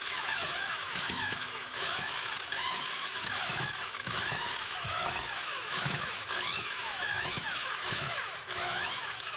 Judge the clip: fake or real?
fake